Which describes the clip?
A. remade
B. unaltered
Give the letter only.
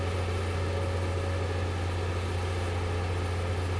B